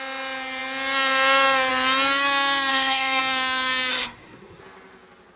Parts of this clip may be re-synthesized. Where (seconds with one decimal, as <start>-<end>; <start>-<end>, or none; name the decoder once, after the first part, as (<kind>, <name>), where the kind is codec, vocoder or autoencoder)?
2.7-3.2 (codec, SNAC); 3.9-4.6